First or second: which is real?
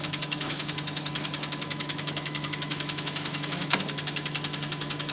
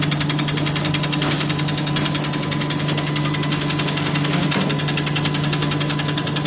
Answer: second